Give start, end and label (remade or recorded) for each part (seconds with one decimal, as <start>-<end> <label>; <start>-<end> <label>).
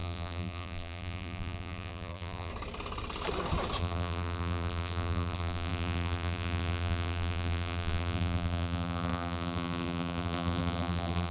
0.0-2.5 remade; 2.5-3.8 recorded; 3.8-11.3 remade